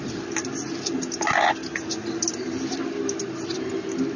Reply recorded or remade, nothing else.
recorded